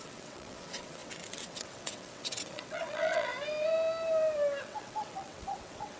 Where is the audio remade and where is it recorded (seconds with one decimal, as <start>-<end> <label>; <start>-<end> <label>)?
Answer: 0.0-3.3 remade; 3.3-4.6 recorded; 4.6-6.0 remade